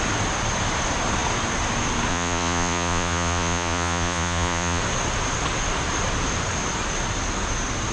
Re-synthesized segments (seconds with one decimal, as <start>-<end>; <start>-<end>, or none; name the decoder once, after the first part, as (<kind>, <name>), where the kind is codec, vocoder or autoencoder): 2.1-4.8 (vocoder, Vocos)